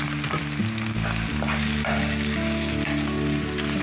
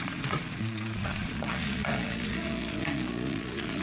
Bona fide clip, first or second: first